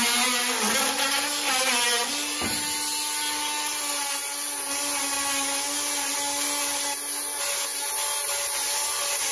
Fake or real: real